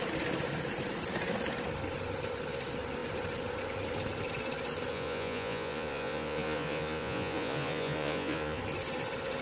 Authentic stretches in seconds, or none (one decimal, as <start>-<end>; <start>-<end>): 0.0-4.9; 8.6-9.4